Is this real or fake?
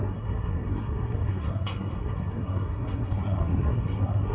fake